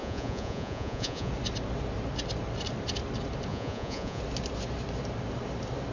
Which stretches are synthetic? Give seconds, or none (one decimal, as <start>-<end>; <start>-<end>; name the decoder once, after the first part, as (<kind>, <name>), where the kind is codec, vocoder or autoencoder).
0.0-1.3 (vocoder, Vocos); 3.5-4.2